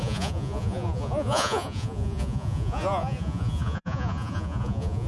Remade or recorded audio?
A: remade